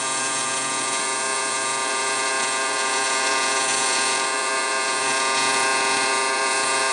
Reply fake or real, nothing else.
fake